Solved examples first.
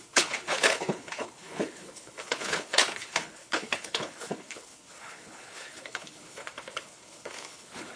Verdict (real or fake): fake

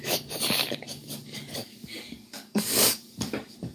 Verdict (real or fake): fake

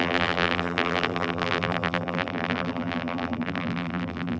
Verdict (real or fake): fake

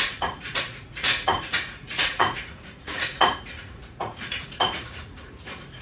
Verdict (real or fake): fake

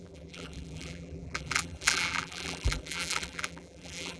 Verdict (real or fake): fake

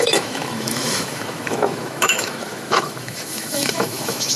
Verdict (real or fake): fake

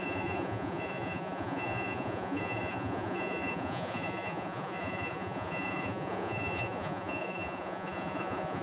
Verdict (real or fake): fake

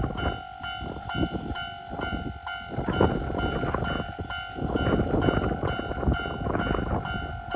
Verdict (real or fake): real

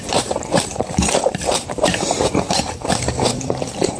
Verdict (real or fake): fake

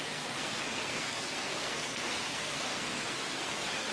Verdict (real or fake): fake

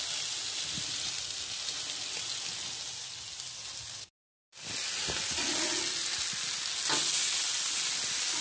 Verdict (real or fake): real